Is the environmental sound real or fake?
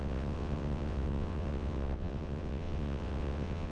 fake